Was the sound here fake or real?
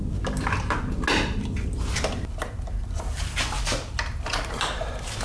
real